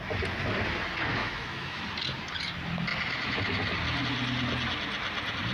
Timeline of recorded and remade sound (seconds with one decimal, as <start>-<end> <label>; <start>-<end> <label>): 0.0-1.2 recorded; 1.2-1.8 remade; 1.8-5.5 recorded